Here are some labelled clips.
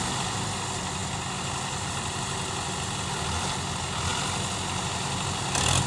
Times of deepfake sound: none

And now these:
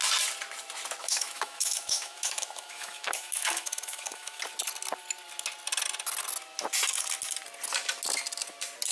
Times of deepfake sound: 1.0-4.4 (autoencoder, DAC-VAE)

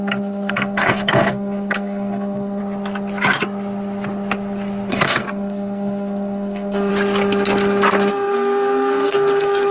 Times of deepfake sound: 0.0-2.6 (codec, SNAC); 4.9-6.9; 8.1-9.7

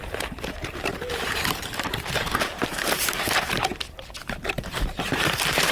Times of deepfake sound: 0.0-5.7 (vocoder, BigVGAN v2)

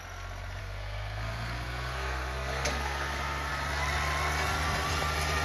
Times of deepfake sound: 0.6-3.5 (codec, SNAC)

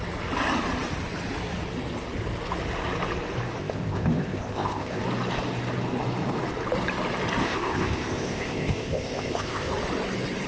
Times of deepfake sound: 3.6-5.0 (codec, ZipCodec); 7.4-9.7

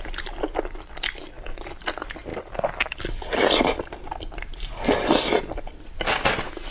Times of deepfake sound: none